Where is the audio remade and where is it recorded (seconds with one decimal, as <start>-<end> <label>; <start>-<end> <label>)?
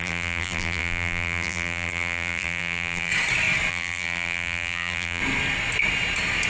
0.0-3.1 remade; 3.1-3.7 recorded; 3.7-5.2 remade; 5.2-6.5 recorded